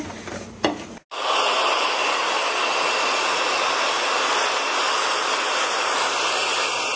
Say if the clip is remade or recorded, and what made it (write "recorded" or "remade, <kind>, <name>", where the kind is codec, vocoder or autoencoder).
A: recorded